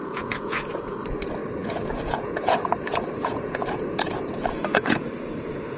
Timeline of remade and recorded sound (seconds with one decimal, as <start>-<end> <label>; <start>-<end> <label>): 0.0-0.9 remade; 0.9-1.6 recorded; 1.6-5.1 remade; 5.1-5.8 recorded